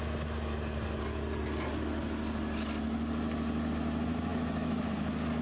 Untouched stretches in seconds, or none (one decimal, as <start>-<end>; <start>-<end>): 0.0-4.3; 4.9-5.4